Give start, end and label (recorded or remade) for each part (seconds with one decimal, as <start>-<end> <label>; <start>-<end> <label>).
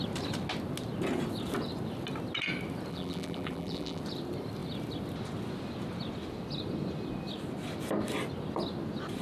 0.0-2.9 recorded; 2.9-4.0 remade; 4.0-9.2 recorded